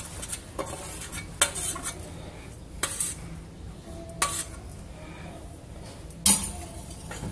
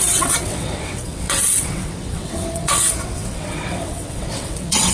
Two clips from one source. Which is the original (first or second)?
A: first